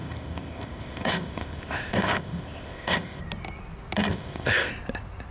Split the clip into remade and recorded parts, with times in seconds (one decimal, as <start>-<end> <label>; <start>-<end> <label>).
0.0-3.2 remade; 3.2-4.1 recorded; 4.1-4.7 remade; 4.7-5.3 recorded